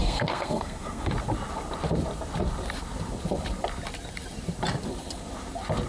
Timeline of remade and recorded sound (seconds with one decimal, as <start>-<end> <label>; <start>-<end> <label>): 0.0-1.1 remade; 1.1-5.9 recorded